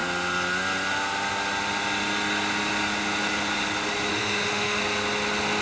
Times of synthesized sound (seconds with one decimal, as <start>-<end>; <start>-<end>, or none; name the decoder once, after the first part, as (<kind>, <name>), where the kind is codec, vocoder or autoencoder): 4.1-4.8 (autoencoder, DAC-VAE)